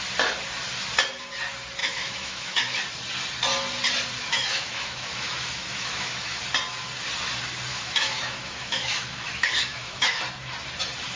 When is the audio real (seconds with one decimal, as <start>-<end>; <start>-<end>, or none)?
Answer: 0.0-1.8; 2.8-4.2; 6.4-7.7; 10.2-11.2